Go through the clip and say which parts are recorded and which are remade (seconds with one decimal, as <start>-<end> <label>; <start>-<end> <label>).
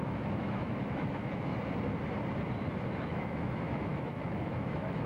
0.0-1.5 remade; 1.5-3.0 recorded; 3.0-5.1 remade